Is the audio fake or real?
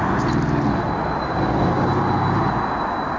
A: real